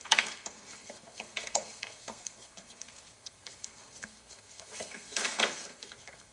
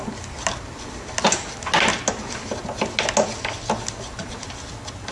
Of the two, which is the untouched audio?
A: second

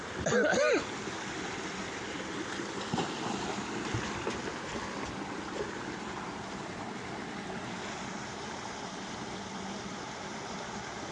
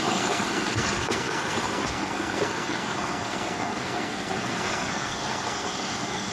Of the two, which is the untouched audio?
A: first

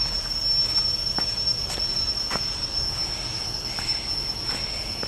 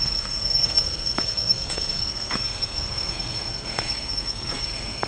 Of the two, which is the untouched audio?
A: first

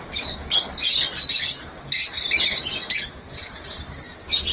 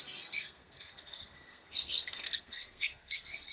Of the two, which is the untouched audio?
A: first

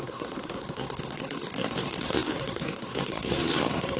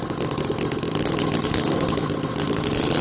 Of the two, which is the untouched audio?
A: second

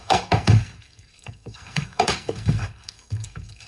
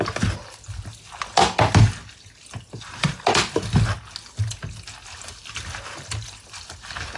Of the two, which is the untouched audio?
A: second